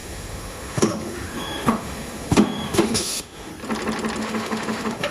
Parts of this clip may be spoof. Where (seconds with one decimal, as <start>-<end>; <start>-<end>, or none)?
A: 0.0-3.5; 4.2-5.1